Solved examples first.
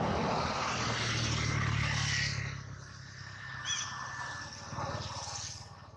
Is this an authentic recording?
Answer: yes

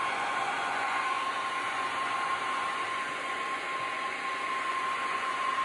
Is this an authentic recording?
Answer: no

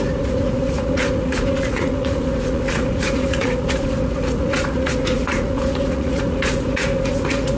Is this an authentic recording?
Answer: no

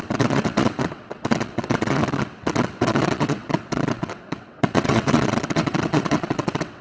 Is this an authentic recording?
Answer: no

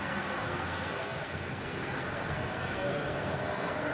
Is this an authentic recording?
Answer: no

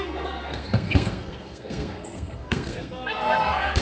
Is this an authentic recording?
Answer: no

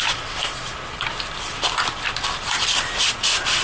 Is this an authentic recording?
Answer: no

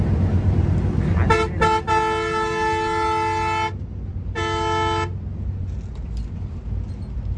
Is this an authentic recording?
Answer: yes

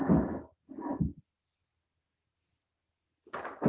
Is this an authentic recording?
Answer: yes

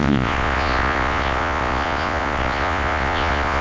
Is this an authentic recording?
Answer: no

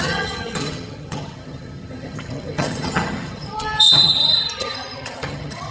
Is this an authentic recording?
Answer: no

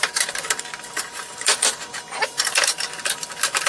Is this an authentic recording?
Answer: no